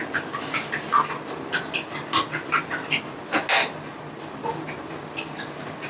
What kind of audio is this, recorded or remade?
recorded